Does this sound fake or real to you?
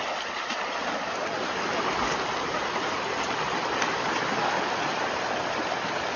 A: real